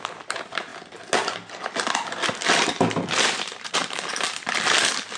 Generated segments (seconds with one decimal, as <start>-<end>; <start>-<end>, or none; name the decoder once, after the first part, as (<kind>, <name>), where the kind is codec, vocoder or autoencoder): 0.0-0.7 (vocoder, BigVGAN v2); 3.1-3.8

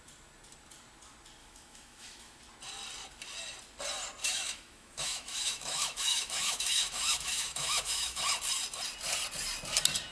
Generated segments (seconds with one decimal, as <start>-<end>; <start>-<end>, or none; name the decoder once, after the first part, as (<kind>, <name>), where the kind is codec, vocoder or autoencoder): 1.4-2.4 (autoencoder, DAC-VAE); 4.2-8.2

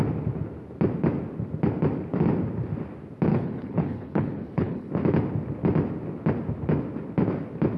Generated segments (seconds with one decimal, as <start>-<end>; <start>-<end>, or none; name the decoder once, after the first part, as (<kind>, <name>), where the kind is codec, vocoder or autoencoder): 3.3-4.9 (codec, HILCodec)

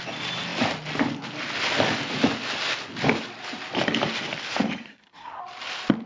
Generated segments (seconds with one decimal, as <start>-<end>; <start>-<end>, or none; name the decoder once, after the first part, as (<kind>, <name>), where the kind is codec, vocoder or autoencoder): 4.8-5.4 (codec, SNAC)